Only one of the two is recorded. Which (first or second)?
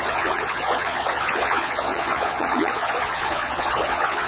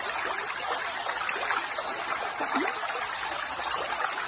second